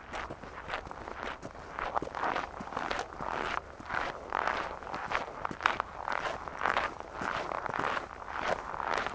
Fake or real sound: real